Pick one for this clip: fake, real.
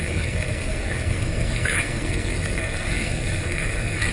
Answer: fake